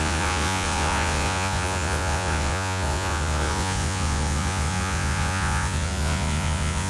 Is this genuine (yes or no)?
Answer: no